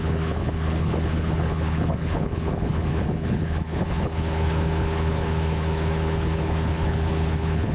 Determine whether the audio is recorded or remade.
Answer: remade